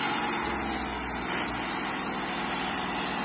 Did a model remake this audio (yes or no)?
no